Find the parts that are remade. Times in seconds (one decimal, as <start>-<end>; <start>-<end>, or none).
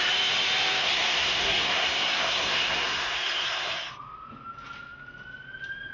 0.8-3.9